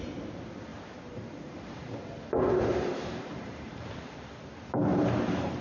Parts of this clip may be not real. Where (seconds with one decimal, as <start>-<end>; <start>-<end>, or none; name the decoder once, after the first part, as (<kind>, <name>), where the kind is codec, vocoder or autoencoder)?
0.7-4.1 (vocoder, BigVGAN v2); 4.9-5.6